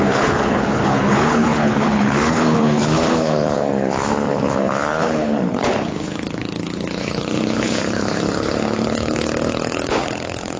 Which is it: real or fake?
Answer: fake